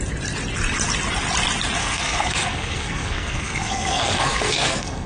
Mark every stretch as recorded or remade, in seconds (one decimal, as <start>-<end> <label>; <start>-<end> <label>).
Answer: 0.0-1.8 recorded; 1.8-5.1 remade